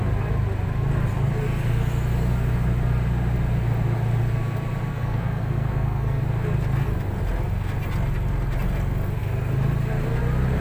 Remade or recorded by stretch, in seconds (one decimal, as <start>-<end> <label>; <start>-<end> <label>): 0.0-4.9 recorded; 4.9-6.2 remade; 6.2-10.6 recorded

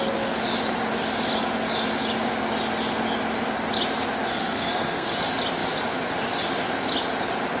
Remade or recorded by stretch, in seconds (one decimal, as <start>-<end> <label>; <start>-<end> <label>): 0.0-4.3 recorded; 4.3-5.1 remade; 5.1-7.6 recorded

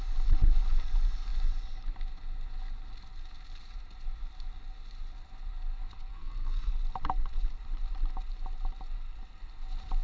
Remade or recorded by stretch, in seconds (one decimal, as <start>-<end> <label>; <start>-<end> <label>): 0.0-6.1 recorded; 6.1-6.7 remade; 6.7-10.0 recorded